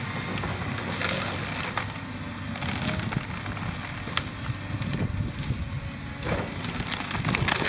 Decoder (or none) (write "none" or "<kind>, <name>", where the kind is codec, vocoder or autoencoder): none